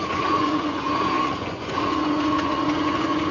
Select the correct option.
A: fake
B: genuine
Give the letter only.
A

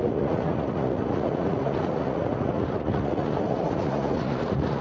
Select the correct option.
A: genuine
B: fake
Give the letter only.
B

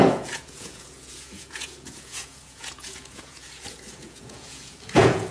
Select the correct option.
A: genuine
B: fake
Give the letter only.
B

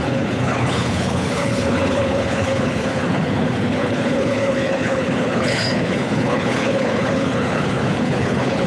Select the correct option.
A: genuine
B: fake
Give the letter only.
B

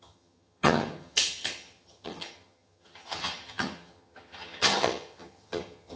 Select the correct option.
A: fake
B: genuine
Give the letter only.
A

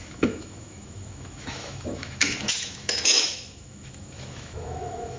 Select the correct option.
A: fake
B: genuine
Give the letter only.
A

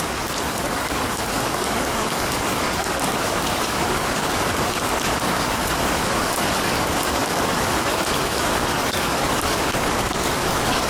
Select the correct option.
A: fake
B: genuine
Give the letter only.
A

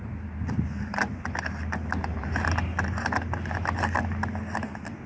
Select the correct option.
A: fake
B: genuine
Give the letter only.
B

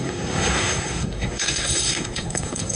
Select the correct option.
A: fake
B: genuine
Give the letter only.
A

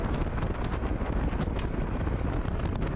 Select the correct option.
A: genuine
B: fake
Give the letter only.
A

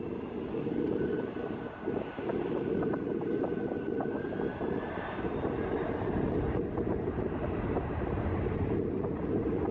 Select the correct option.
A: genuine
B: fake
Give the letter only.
A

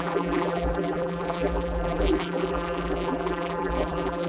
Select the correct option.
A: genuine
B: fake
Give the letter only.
B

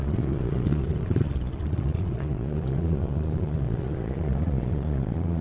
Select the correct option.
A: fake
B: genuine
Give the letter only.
A